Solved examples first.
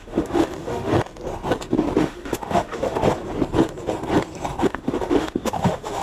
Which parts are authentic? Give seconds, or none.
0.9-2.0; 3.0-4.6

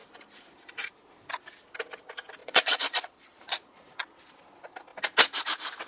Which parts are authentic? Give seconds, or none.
0.0-2.4; 4.2-5.9

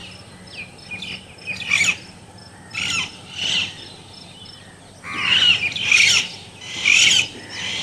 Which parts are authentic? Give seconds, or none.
0.0-7.8

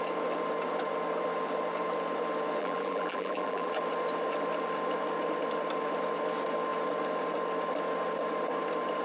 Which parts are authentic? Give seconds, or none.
0.0-2.6; 3.7-9.0

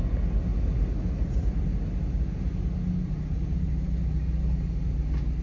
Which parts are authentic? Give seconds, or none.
0.0-5.4

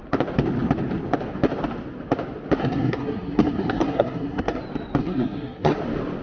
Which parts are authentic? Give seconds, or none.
0.0-2.6; 4.6-5.0; 5.8-6.2

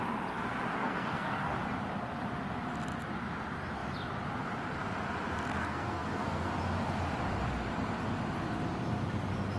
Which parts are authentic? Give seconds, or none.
0.0-0.8; 1.5-5.5; 6.5-9.6